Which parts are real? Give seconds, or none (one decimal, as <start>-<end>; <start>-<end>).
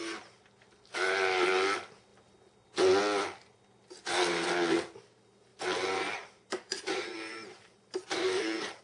0.0-5.5